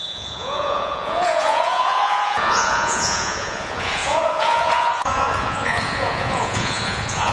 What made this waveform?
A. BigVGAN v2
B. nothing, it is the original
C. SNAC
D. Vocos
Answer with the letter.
D